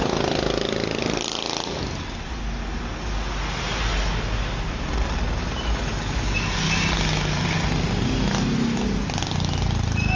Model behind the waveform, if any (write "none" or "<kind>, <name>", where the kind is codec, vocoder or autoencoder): none